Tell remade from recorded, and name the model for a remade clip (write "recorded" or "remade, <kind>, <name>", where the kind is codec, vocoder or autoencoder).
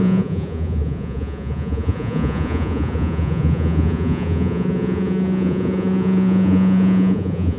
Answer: remade, vocoder, Vocos